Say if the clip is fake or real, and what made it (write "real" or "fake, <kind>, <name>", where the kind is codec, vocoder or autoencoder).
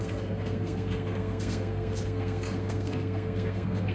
fake, codec, SNAC